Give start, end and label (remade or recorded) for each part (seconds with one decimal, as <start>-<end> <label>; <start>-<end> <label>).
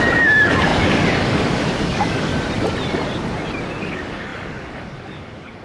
0.0-2.3 remade; 2.3-3.8 recorded; 3.8-5.6 remade